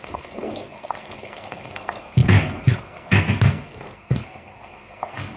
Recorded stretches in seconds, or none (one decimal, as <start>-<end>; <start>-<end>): none